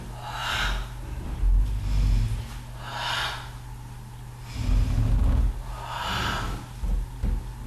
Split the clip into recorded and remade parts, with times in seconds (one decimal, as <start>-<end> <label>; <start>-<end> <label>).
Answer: 0.0-7.7 recorded